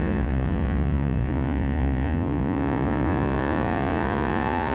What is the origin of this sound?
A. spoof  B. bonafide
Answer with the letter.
A